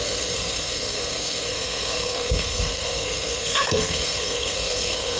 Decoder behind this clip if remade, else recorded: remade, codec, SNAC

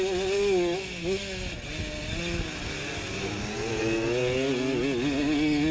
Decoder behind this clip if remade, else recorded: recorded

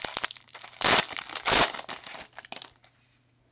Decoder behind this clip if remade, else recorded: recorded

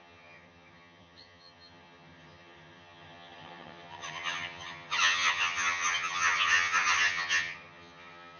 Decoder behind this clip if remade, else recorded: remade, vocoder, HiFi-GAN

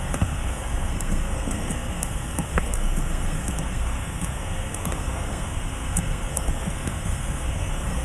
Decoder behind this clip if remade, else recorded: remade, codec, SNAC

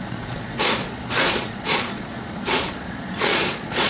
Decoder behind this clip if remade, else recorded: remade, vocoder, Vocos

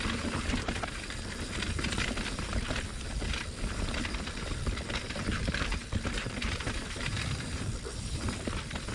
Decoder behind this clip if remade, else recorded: remade, vocoder, BigVGAN v2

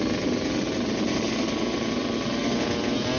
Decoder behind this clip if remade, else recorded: recorded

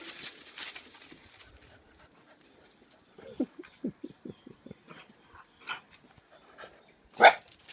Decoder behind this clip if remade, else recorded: recorded